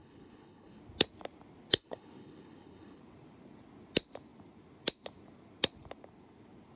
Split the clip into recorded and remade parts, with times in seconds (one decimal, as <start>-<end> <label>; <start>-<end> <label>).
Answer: 0.0-0.8 remade; 0.8-1.7 recorded; 1.7-3.0 remade; 3.0-6.8 recorded